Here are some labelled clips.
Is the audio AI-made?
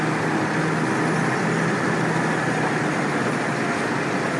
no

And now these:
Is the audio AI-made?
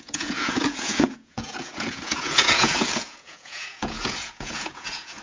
yes